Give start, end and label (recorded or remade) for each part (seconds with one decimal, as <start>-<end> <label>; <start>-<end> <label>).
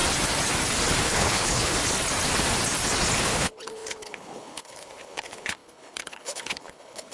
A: 0.0-1.0 recorded; 1.0-1.8 remade; 1.8-3.2 recorded; 3.2-7.1 remade